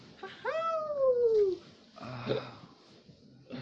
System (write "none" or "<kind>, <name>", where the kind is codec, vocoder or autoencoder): none